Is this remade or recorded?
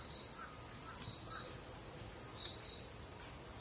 recorded